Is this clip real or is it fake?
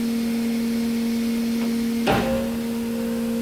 real